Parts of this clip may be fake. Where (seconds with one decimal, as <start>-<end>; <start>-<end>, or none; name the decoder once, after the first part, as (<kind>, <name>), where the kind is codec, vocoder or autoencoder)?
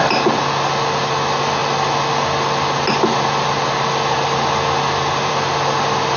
none